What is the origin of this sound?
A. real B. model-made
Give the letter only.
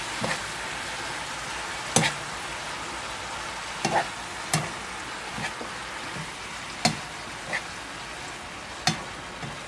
A